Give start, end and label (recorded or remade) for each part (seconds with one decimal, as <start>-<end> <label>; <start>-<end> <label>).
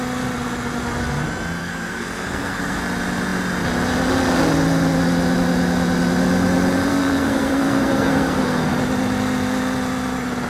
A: 0.0-1.6 recorded; 1.6-2.8 remade; 2.8-6.9 recorded; 6.9-8.7 remade; 8.7-10.5 recorded